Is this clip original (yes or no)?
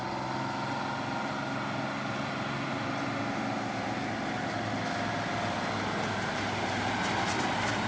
yes